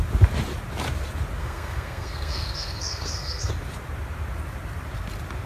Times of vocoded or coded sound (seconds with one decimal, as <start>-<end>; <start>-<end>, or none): 1.4-3.5